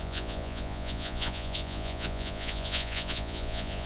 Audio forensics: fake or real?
fake